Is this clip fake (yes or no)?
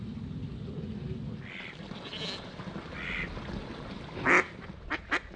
no